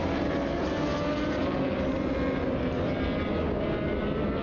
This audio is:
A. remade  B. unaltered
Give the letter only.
B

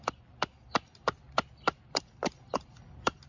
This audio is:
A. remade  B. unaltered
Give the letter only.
B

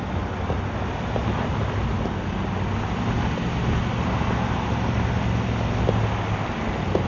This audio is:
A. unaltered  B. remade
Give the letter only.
A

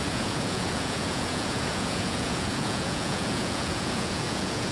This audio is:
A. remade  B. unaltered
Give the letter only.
A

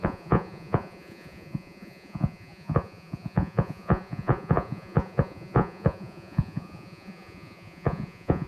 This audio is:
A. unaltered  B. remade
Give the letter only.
B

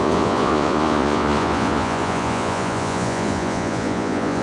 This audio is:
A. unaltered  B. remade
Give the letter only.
B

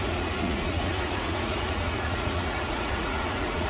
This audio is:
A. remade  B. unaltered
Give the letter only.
A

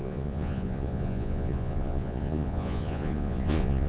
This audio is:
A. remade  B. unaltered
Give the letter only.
A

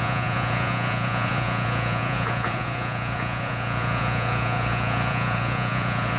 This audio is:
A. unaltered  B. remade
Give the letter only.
B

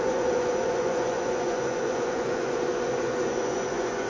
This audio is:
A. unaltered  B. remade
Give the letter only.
B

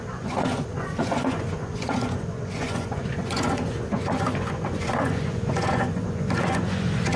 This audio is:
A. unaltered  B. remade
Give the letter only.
B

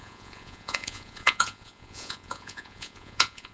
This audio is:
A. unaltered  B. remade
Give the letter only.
B